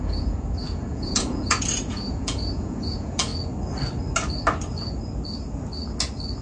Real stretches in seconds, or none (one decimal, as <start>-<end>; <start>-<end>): 3.3-6.4